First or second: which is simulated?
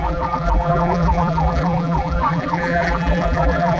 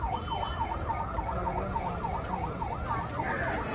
first